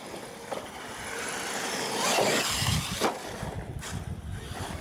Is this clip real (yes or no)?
yes